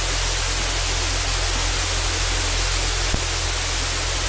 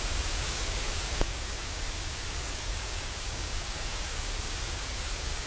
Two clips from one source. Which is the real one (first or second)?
first